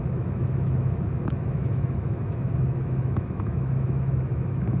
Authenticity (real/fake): fake